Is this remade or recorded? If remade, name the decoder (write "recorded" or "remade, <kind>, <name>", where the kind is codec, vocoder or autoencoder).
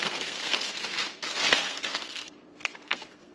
remade, codec, SNAC